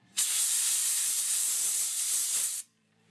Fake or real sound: fake